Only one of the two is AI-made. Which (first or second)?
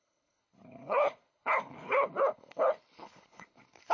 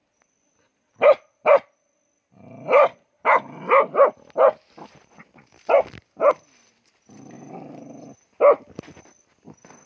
first